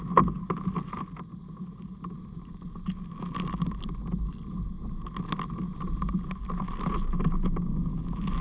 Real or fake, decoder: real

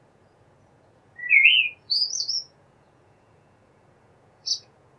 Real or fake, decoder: fake, vocoder, Vocos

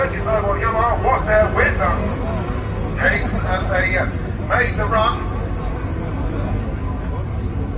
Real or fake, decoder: real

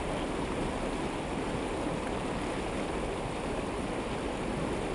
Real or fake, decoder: real